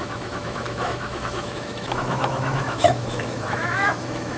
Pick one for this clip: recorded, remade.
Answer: remade